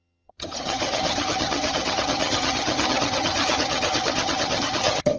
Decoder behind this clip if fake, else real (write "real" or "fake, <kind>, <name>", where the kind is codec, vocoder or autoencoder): fake, vocoder, HiFi-GAN